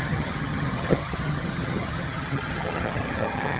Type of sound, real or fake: fake